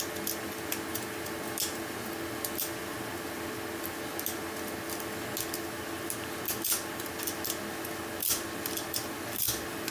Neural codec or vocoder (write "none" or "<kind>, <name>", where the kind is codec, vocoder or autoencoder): none